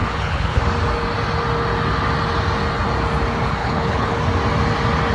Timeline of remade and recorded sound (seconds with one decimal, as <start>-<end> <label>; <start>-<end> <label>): 0.0-0.6 remade; 0.6-3.6 recorded; 3.6-4.2 remade; 4.2-5.1 recorded